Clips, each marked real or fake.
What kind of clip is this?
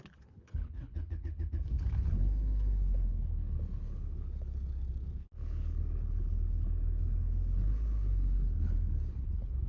fake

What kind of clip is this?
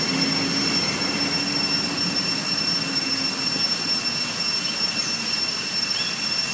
real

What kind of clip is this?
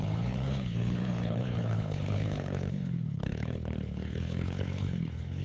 fake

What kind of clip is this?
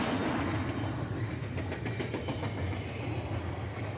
real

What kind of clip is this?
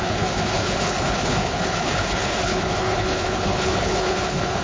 fake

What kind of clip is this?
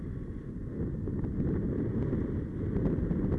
real